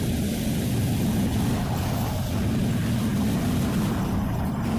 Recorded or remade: recorded